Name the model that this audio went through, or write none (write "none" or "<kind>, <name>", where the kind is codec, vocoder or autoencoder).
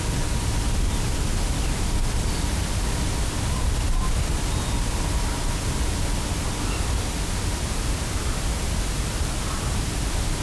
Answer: none